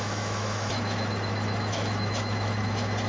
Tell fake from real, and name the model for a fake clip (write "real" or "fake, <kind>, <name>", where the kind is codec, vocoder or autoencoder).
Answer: fake, autoencoder, DAC-VAE